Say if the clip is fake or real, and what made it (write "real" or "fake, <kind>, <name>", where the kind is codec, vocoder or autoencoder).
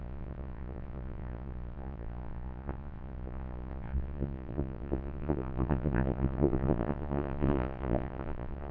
fake, vocoder, Vocos